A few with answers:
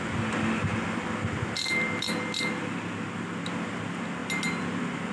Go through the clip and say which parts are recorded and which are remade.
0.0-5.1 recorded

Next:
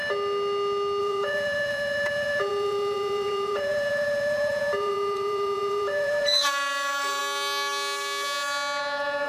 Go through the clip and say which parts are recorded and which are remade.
0.0-1.0 recorded; 1.0-7.2 remade; 7.2-8.8 recorded; 8.8-9.3 remade

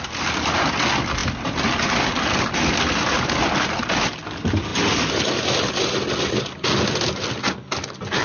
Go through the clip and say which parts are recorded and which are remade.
0.0-8.2 recorded

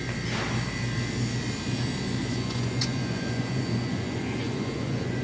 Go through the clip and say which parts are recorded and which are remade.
0.0-2.2 recorded; 2.2-5.2 remade

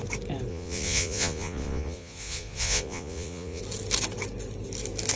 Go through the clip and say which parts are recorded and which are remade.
0.0-0.5 recorded; 0.5-3.6 remade; 3.6-5.2 recorded